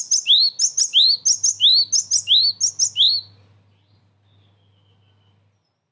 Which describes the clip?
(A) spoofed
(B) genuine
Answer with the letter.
B